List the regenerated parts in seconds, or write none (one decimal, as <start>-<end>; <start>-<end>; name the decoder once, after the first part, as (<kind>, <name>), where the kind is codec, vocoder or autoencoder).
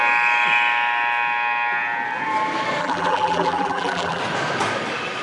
2.8-4.2 (vocoder, BigVGAN v2)